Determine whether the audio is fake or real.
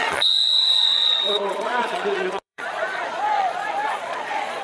fake